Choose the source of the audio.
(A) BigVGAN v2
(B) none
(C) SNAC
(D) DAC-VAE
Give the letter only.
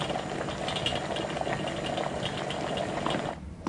B